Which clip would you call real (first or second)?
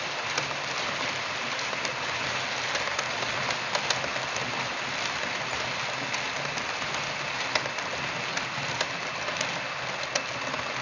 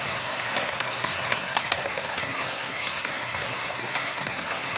first